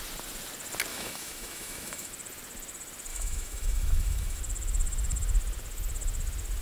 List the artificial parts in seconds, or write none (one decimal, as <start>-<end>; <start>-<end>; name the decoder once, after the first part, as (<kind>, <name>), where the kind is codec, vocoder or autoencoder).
0.9-2.1 (autoencoder, DAC-VAE); 3.1-4.4